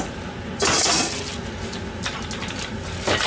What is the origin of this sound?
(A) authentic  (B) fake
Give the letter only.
A